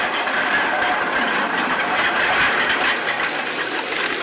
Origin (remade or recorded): recorded